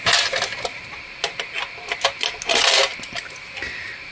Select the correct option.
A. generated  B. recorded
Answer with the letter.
B